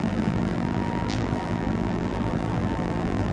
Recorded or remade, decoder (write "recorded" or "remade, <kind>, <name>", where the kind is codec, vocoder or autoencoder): remade, vocoder, BigVGAN v2